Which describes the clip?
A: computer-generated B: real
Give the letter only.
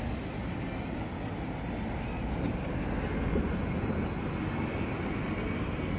B